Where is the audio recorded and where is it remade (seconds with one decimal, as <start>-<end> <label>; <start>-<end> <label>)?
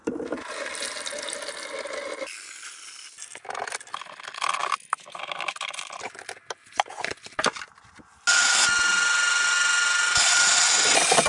0.0-11.3 recorded